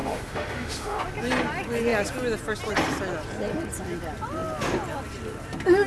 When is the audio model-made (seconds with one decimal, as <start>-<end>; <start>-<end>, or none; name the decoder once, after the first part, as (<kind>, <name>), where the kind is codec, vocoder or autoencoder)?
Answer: 0.0-1.0 (autoencoder, DAC-VAE)